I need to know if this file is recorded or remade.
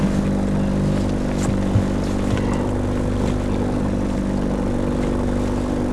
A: recorded